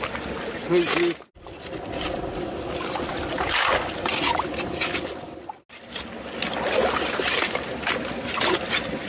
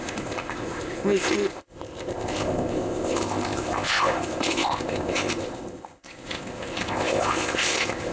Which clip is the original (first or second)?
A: first